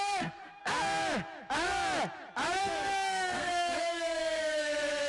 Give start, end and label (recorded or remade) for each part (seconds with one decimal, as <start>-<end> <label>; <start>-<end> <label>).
0.0-0.6 remade; 0.6-2.6 recorded; 2.6-5.1 remade